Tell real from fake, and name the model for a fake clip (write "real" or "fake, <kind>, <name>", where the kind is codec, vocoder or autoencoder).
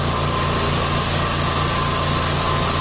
real